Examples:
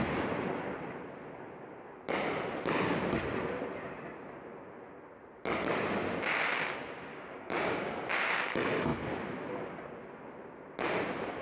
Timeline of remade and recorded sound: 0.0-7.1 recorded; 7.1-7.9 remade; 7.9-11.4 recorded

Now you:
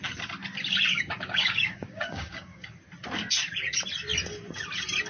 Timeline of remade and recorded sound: 0.0-0.9 recorded; 0.9-2.8 remade; 2.8-5.1 recorded

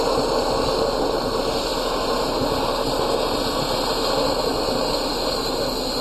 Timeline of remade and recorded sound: 0.0-6.0 recorded

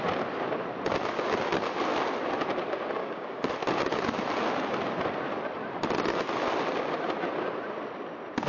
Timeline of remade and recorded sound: 0.0-3.0 recorded; 3.0-3.5 remade; 3.5-8.5 recorded

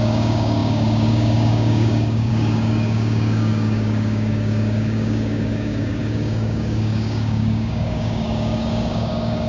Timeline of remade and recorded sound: 0.0-9.5 remade

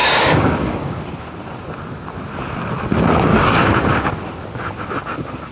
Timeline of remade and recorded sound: 0.0-1.0 remade; 1.0-3.3 recorded; 3.3-4.1 remade; 4.1-5.5 recorded